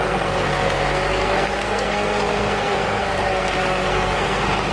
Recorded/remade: remade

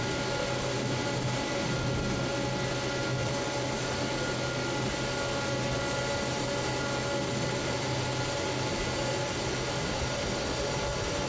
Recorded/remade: recorded